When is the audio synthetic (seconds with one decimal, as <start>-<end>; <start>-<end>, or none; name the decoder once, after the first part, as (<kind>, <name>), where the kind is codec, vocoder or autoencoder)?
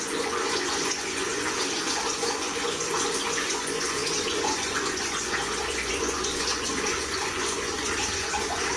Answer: 0.0-8.8 (vocoder, Vocos)